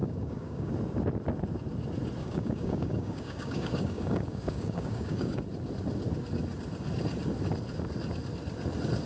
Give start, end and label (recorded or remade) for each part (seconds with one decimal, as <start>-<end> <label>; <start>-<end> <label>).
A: 0.0-0.7 remade; 0.7-2.2 recorded; 2.2-5.4 remade; 5.4-9.1 recorded